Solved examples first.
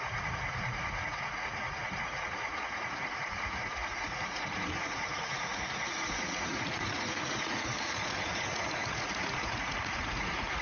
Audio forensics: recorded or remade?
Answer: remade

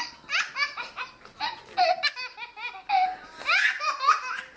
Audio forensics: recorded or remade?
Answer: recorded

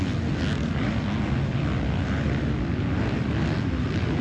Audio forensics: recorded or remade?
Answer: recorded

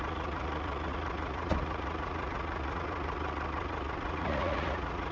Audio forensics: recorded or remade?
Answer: remade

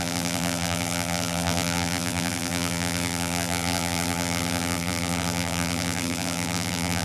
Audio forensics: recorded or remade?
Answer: remade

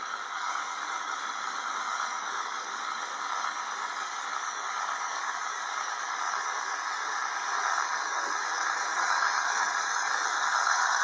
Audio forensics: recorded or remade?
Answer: remade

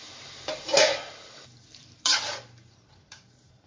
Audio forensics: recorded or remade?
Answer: remade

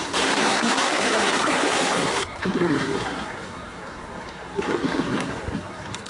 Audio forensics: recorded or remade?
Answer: remade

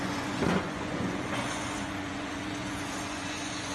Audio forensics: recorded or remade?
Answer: remade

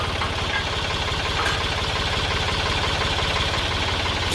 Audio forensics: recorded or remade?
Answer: recorded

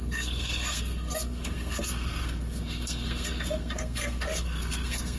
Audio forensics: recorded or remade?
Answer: remade